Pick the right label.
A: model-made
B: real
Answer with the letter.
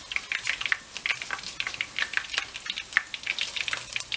B